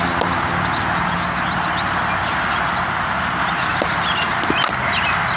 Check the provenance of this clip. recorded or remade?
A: recorded